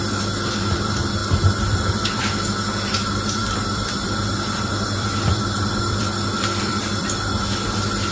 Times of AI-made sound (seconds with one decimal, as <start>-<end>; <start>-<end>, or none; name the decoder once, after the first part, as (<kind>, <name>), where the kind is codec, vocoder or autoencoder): 3.4-7.4 (vocoder, BigVGAN v2)